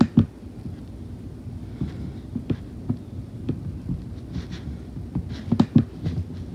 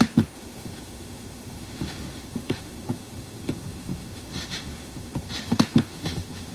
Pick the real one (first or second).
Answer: first